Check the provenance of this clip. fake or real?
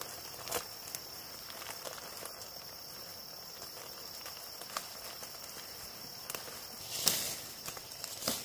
real